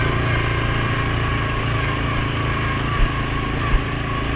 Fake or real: real